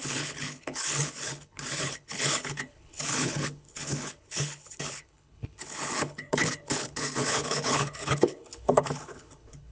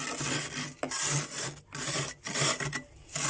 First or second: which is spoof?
first